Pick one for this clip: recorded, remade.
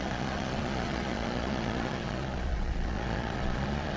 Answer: remade